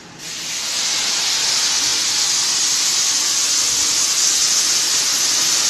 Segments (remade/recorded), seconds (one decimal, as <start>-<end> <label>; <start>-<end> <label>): 0.0-5.7 recorded